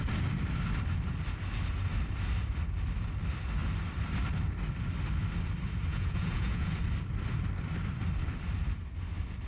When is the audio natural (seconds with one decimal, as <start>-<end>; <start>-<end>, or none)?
0.0-5.9; 6.8-9.5